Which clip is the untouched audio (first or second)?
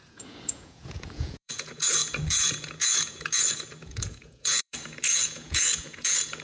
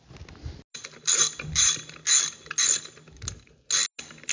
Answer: second